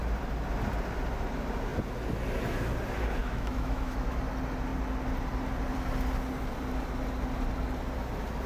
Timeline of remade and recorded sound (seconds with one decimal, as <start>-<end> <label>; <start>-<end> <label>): 0.0-3.2 recorded; 3.2-4.2 remade; 4.2-8.5 recorded